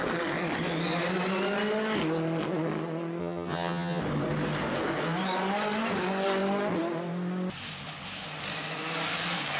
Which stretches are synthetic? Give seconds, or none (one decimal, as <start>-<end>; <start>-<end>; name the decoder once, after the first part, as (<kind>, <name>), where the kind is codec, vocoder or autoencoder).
3.2-4.0 (vocoder, HiFi-GAN)